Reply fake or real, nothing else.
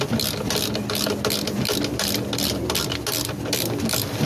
real